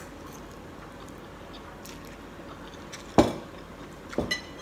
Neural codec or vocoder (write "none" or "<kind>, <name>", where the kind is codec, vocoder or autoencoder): none